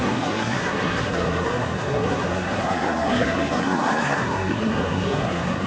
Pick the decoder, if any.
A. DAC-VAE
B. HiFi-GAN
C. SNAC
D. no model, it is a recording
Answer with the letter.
C